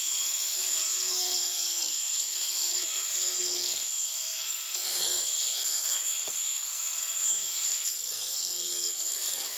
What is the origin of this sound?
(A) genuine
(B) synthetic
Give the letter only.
B